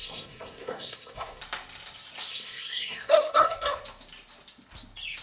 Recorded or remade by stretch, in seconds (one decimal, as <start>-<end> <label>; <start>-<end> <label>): 0.0-1.4 remade; 1.4-2.3 recorded; 2.3-3.8 remade; 3.8-5.2 recorded